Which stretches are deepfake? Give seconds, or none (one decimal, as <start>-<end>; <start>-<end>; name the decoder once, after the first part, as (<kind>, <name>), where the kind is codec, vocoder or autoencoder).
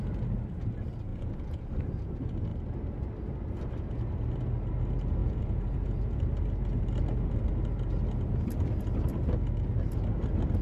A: 1.1-1.7 (vocoder, Vocos); 5.2-6.2